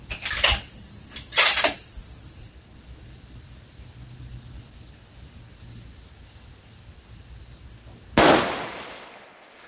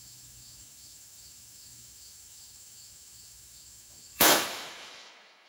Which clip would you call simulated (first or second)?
second